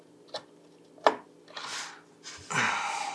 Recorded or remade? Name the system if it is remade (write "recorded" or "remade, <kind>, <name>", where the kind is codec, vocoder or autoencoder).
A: recorded